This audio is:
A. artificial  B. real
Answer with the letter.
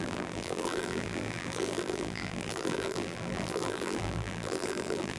A